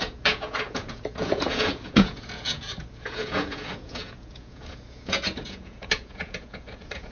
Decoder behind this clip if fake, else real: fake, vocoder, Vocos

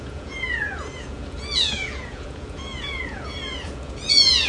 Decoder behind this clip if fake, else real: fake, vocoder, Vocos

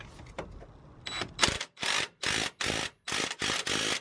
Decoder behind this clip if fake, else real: real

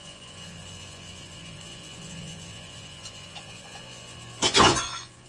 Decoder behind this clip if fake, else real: fake, vocoder, Vocos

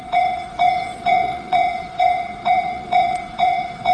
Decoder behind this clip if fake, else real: fake, vocoder, Vocos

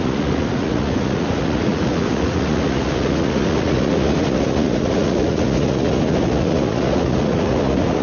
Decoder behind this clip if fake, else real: fake, vocoder, Vocos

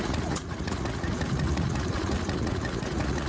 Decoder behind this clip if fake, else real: fake, vocoder, Vocos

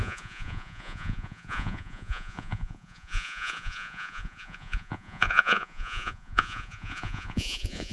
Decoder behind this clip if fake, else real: fake, vocoder, Vocos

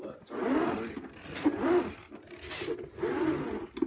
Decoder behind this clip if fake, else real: real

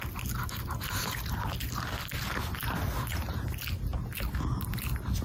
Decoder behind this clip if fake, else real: real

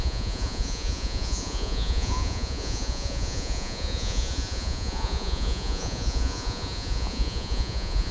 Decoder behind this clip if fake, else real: fake, vocoder, Vocos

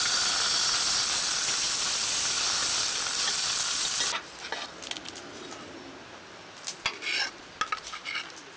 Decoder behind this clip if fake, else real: real